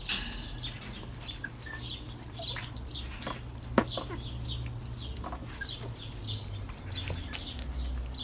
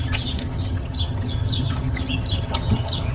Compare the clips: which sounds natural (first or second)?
first